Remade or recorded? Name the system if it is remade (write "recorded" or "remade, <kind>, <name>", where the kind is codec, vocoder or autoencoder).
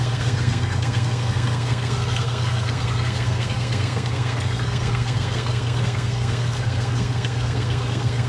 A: remade, codec, SNAC